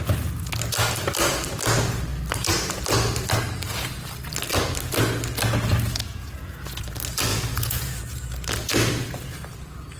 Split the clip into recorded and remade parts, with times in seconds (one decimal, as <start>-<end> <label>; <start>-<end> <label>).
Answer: 0.0-5.9 recorded; 5.9-6.8 remade; 6.8-7.3 recorded; 7.3-8.0 remade; 8.0-10.0 recorded